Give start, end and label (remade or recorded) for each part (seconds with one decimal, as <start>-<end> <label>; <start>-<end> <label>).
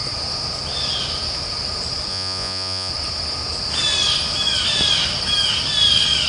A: 0.0-2.1 recorded; 2.1-2.9 remade; 2.9-6.3 recorded